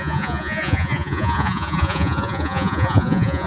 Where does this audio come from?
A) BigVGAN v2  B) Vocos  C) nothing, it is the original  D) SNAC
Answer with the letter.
B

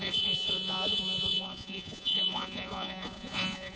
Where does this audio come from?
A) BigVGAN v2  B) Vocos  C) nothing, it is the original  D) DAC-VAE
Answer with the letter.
B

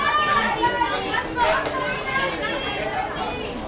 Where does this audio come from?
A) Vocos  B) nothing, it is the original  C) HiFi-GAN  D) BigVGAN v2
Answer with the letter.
B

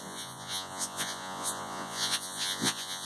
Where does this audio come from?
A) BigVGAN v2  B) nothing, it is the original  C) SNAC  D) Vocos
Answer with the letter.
D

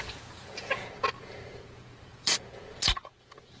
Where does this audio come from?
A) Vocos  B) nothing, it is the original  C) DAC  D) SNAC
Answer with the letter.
A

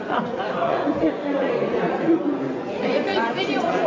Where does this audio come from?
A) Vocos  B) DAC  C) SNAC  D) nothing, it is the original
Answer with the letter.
A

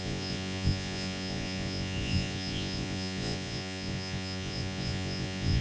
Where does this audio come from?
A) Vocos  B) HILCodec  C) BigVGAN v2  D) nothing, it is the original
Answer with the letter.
A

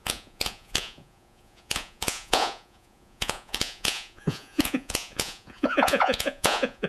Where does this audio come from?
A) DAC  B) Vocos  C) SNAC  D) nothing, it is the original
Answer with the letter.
B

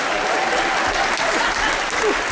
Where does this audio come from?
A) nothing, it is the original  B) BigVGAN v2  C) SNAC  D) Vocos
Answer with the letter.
A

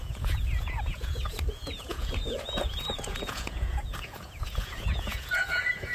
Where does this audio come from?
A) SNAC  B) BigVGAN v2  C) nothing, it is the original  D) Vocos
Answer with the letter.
D